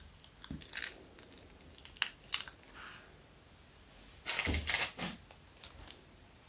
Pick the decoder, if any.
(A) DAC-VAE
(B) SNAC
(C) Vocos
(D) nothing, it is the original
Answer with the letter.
D